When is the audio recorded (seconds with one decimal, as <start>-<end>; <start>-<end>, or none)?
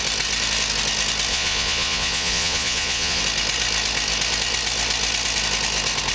0.0-1.3; 3.2-6.1